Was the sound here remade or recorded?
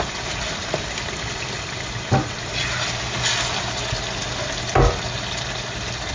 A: recorded